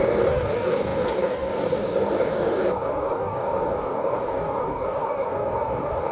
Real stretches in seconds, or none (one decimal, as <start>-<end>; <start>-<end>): none